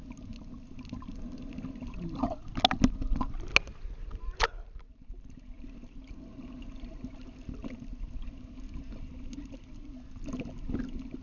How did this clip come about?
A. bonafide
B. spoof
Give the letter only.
A